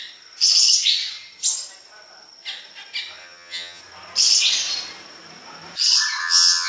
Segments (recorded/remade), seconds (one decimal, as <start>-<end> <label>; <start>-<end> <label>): 0.0-3.2 recorded; 3.2-3.8 remade; 3.8-6.2 recorded; 6.2-6.7 remade